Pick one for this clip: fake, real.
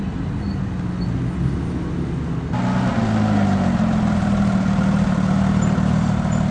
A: real